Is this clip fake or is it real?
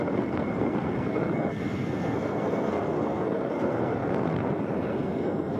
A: fake